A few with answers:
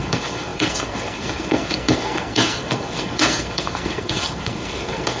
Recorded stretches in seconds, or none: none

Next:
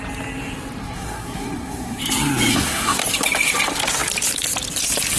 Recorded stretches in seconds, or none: 0.0-0.8; 2.0-2.5; 3.0-5.2

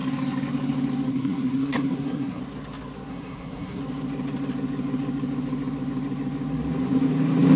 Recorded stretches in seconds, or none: 0.0-1.1; 2.4-3.1; 3.8-7.6

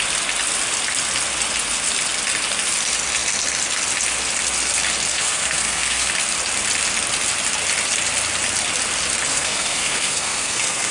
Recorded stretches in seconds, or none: 0.0-5.1; 6.1-9.3